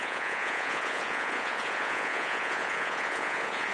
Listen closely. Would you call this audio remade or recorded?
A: remade